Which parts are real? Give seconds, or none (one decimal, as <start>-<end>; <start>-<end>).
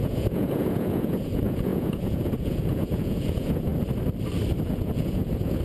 3.7-4.6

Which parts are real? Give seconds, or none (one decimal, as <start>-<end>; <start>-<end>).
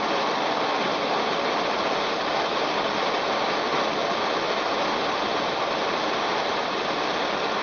0.0-7.6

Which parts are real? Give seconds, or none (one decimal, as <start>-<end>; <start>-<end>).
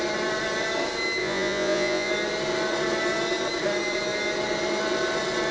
0.0-1.2; 2.1-5.5